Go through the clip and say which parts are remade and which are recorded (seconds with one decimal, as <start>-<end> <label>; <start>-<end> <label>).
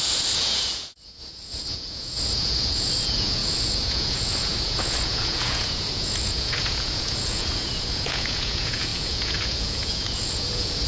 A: 0.0-10.9 remade